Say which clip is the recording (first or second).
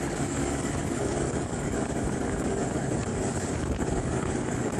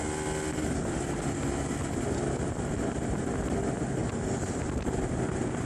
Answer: second